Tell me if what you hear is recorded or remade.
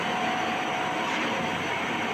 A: remade